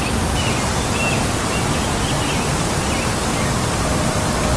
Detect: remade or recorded recorded